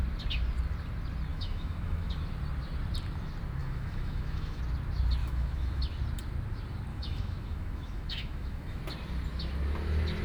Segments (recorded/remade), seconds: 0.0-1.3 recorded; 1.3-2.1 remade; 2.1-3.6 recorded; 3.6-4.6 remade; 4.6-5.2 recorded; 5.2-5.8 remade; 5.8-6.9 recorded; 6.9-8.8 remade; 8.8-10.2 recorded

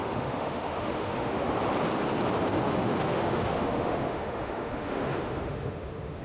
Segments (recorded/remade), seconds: 0.0-1.5 remade; 1.5-2.5 recorded; 2.5-6.2 remade

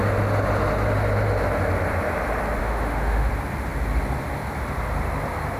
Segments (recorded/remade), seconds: 0.0-2.6 recorded; 2.6-3.3 remade; 3.3-5.6 recorded

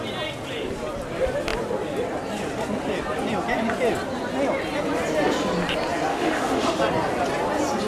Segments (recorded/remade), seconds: 0.0-6.1 recorded; 6.1-6.8 remade; 6.8-7.9 recorded